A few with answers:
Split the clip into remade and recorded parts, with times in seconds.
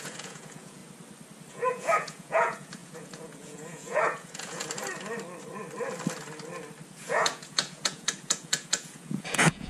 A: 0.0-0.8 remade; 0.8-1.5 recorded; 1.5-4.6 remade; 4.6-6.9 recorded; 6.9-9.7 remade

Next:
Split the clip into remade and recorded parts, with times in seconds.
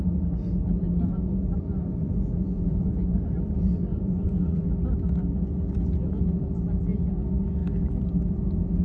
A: 0.0-2.0 recorded; 2.0-2.9 remade; 2.9-3.9 recorded; 3.9-4.7 remade; 4.7-8.8 recorded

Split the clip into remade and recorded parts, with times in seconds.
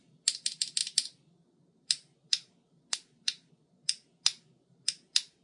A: 0.0-5.4 recorded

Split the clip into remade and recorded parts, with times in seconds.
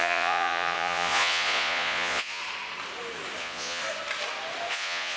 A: 0.0-2.4 remade; 2.4-3.4 recorded; 3.4-3.8 remade; 3.8-4.7 recorded; 4.7-5.2 remade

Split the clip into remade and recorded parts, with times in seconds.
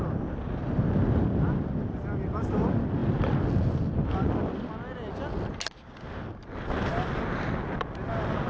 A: 0.0-8.5 recorded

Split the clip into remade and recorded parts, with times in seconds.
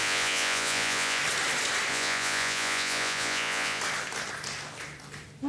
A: 0.0-1.2 remade; 1.2-1.9 recorded; 1.9-3.8 remade; 3.8-5.5 recorded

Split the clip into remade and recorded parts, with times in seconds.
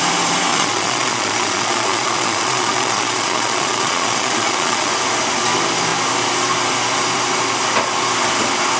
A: 0.0-0.5 recorded; 0.5-4.9 remade; 4.9-8.8 recorded